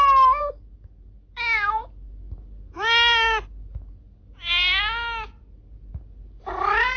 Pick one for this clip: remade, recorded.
recorded